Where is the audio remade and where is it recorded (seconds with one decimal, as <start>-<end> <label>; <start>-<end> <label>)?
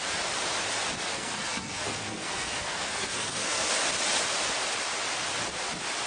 0.0-1.1 recorded; 1.1-3.7 remade; 3.7-6.1 recorded